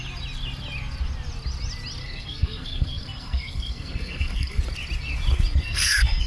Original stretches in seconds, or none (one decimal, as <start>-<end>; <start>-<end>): 0.0-2.0; 4.6-5.6